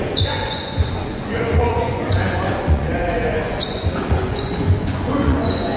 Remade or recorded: remade